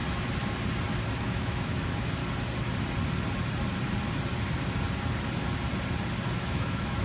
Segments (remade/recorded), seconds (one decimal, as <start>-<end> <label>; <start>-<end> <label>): 0.0-1.2 recorded; 1.2-2.2 remade; 2.2-6.4 recorded; 6.4-7.0 remade